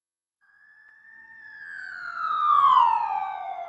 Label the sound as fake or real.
fake